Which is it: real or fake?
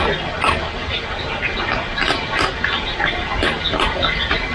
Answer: real